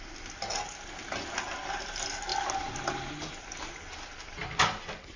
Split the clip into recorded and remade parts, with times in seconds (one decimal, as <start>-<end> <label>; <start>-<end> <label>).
0.0-5.2 recorded